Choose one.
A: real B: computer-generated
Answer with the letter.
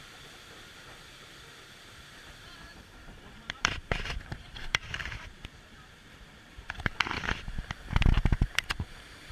B